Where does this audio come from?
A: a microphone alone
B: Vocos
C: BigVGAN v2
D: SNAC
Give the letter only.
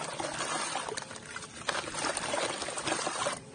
A